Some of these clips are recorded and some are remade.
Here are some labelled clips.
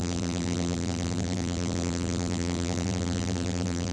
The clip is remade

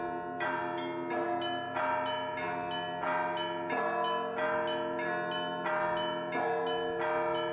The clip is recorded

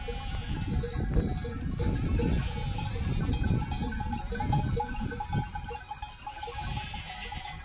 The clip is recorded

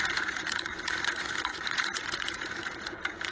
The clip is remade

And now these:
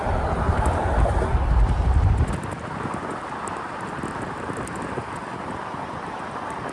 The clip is recorded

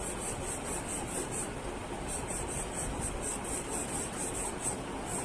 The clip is remade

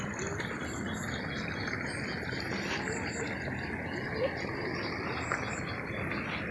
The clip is recorded